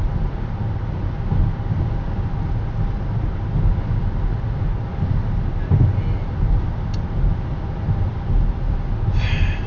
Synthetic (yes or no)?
no